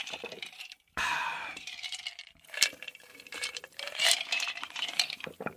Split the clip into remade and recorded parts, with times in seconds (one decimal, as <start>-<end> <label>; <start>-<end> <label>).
0.0-5.6 remade